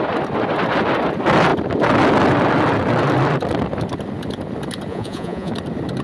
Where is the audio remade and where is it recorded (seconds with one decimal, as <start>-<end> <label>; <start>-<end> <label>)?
0.0-4.9 recorded; 4.9-5.5 remade; 5.5-6.0 recorded